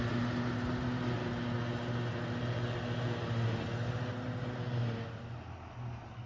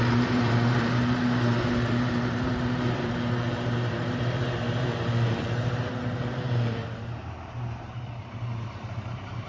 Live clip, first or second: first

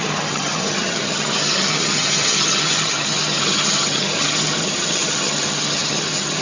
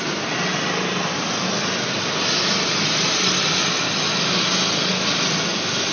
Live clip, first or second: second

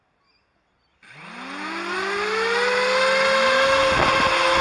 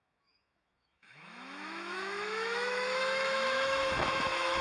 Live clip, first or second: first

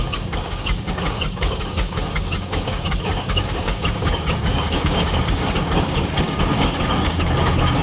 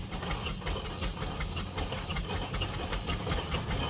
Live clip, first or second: second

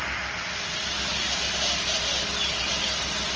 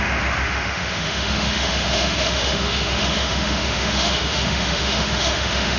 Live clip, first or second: first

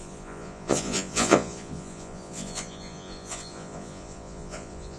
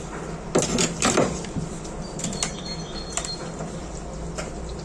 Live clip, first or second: second